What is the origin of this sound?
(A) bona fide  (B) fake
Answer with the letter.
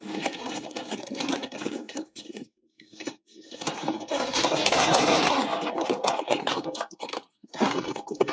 B